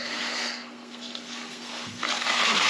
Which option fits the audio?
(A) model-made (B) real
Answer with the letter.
A